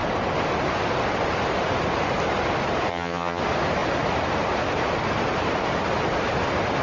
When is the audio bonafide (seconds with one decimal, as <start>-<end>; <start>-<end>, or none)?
0.0-2.9; 3.4-6.8